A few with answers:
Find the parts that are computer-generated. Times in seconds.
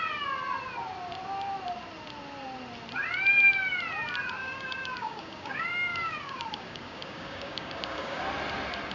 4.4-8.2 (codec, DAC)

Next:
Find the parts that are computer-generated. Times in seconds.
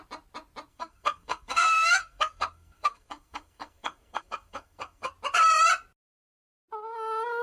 0.7-5.1 (codec, SNAC)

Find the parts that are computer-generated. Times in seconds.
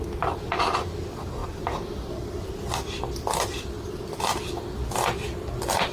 none